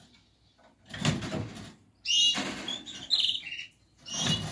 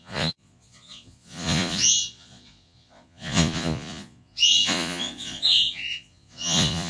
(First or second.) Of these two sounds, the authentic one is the first